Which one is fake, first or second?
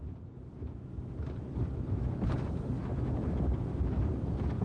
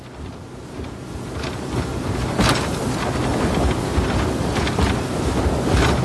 first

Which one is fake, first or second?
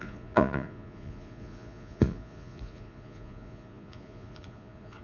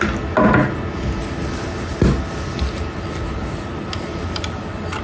first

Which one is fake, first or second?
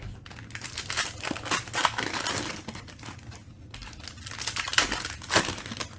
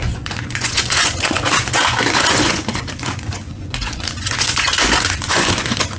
second